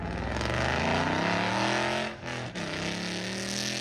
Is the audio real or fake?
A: real